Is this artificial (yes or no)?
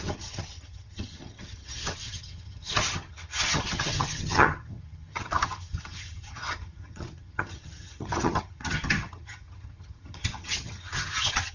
yes